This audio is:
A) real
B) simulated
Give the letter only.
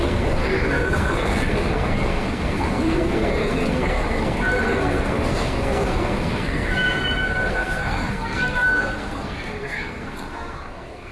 B